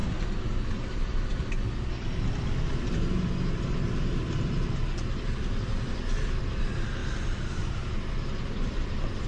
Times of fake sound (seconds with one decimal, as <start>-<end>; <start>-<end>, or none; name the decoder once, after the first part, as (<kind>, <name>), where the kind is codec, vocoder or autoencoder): 0.7-1.3 (vocoder, BigVGAN v2); 6.4-7.0; 7.5-9.3